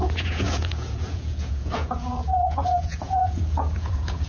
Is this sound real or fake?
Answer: fake